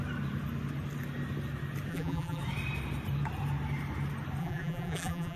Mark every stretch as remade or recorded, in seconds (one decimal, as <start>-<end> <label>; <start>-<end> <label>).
0.0-1.9 recorded; 1.9-2.4 remade; 2.4-4.4 recorded; 4.4-5.4 remade